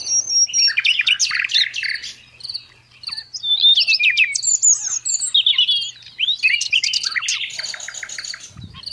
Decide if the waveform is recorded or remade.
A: recorded